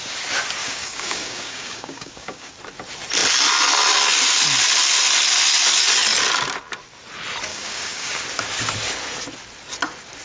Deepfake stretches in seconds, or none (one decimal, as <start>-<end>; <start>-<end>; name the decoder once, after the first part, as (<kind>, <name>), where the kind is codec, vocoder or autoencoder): 0.6-2.5 (codec, DAC); 7.5-8.2

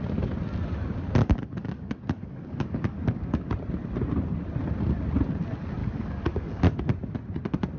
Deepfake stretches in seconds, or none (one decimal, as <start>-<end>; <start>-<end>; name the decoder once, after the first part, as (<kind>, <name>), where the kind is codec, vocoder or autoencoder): 1.2-3.5 (codec, DAC); 5.8-6.6